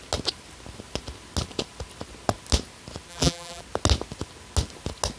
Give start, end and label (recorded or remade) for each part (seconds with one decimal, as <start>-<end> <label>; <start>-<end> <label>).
0.0-3.1 recorded; 3.1-3.6 remade; 3.6-5.2 recorded